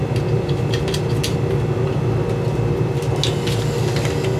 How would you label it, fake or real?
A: real